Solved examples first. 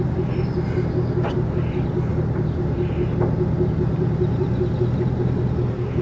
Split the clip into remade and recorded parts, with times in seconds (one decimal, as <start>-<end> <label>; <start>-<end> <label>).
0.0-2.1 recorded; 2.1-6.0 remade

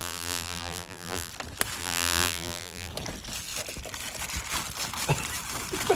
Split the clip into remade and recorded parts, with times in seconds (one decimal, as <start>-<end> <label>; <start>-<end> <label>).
0.0-1.3 remade; 1.3-1.8 recorded; 1.8-2.9 remade; 2.9-6.0 recorded

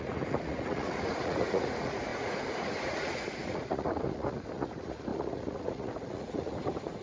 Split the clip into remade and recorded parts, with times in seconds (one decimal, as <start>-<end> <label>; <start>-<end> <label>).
0.0-7.0 remade

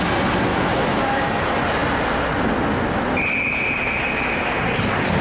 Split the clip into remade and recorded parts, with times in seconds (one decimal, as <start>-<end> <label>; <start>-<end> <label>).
0.0-0.5 recorded; 0.5-1.2 remade; 1.2-5.2 recorded

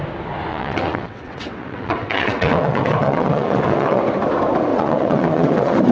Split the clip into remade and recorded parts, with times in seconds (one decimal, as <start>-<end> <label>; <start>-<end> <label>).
0.0-0.5 recorded; 0.5-4.0 remade; 4.0-4.7 recorded; 4.7-5.9 remade

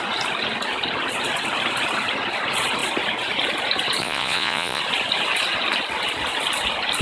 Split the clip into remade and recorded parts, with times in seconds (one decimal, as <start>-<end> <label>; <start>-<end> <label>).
0.0-4.0 recorded; 4.0-4.8 remade; 4.8-7.0 recorded

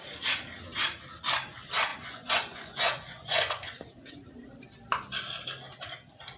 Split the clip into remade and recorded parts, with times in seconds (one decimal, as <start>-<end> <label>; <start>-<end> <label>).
0.0-1.9 recorded; 1.9-4.3 remade; 4.3-6.4 recorded